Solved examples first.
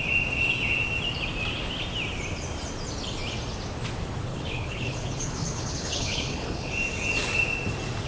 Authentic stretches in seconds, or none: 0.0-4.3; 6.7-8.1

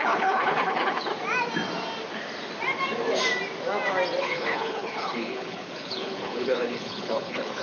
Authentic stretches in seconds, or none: 1.1-4.2

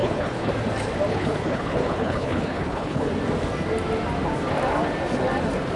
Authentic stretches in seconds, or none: 0.5-1.1; 3.1-5.8

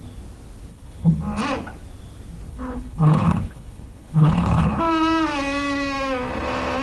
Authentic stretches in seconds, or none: 0.0-0.7; 1.2-2.5; 4.8-6.8

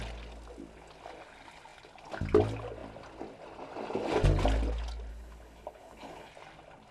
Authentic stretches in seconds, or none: 0.0-5.1; 6.3-6.9

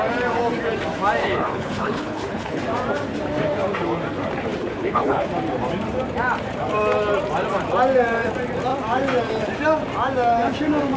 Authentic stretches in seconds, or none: 0.0-1.2; 2.6-4.6; 5.3-11.0

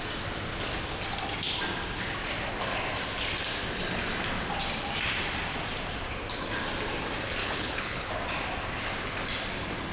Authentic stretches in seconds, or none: 0.0-7.4; 8.1-9.9

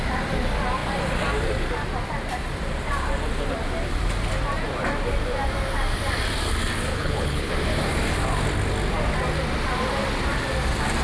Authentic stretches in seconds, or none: 0.0-6.9; 7.5-11.0